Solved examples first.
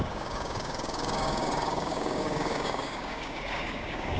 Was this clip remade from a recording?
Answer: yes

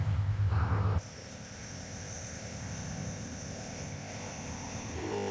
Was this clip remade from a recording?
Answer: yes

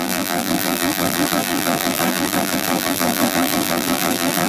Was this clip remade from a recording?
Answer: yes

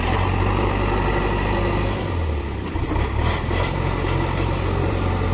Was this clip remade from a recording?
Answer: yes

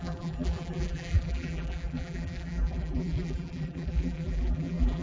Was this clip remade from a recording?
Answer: yes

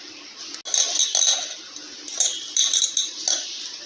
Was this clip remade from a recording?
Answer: no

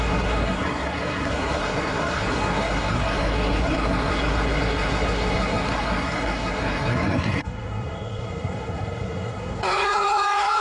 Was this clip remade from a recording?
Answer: yes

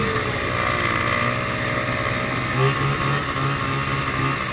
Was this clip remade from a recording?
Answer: no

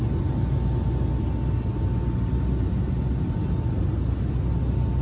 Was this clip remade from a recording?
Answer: no